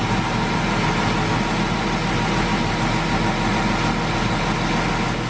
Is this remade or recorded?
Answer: recorded